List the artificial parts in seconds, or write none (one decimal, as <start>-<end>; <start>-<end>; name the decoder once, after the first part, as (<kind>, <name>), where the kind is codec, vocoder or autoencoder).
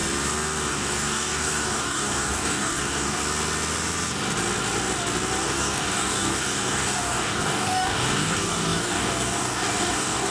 0.7-3.2 (codec, DAC); 5.4-10.3